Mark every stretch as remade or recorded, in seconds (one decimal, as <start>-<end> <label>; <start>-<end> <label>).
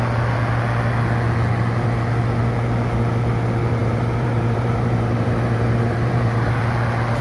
0.0-3.8 recorded; 3.8-6.6 remade; 6.6-7.2 recorded